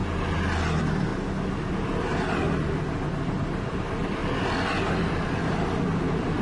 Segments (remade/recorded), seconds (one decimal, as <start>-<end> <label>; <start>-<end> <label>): 0.0-0.6 recorded; 0.6-1.1 remade; 1.1-1.7 recorded; 1.7-4.2 remade; 4.2-4.9 recorded; 4.9-6.4 remade